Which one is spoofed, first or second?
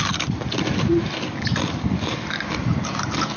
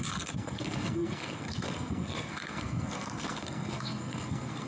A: second